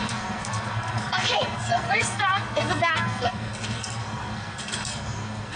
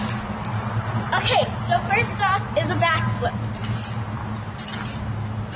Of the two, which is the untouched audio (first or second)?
second